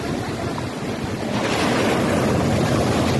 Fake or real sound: real